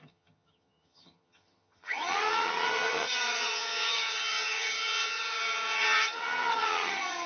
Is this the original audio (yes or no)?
no